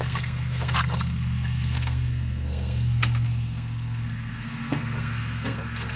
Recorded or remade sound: remade